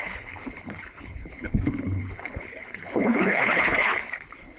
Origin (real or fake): fake